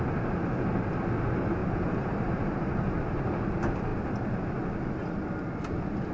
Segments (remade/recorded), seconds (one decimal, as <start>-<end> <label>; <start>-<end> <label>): 0.0-1.6 recorded; 1.6-3.0 remade; 3.0-6.1 recorded